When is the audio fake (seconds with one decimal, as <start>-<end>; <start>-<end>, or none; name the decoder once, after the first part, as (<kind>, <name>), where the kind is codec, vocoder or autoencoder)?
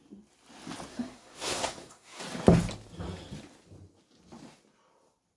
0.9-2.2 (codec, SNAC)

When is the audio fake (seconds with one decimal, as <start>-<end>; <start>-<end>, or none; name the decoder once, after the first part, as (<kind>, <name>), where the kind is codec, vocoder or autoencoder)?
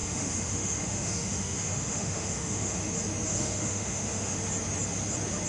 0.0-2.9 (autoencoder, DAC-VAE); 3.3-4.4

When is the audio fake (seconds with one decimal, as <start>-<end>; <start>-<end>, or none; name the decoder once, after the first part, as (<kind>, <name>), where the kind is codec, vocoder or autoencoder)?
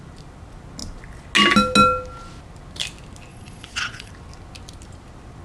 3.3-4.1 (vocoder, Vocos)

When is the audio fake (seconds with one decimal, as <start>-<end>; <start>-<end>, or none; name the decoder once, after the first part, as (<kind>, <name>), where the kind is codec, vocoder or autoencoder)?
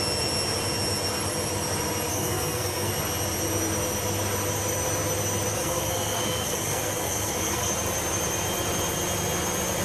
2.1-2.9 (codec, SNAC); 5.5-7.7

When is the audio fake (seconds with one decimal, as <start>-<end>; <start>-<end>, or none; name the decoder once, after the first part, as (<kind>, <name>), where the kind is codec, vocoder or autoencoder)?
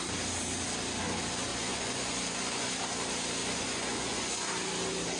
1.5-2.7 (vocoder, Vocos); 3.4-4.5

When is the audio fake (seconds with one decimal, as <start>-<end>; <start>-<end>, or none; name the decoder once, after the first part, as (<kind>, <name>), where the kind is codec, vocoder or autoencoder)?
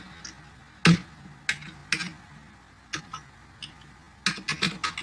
none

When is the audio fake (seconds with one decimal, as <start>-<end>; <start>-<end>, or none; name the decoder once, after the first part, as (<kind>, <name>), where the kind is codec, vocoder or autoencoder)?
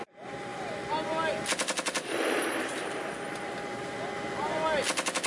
none